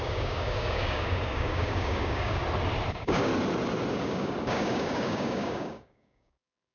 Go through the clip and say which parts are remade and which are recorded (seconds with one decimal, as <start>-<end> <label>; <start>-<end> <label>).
0.0-2.4 remade; 2.4-2.9 recorded; 2.9-3.3 remade; 3.3-3.9 recorded; 3.9-6.7 remade